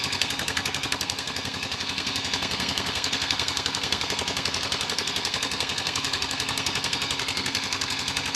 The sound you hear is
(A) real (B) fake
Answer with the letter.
B